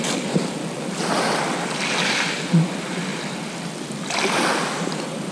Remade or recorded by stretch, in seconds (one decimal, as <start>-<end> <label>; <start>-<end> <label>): 0.0-5.3 recorded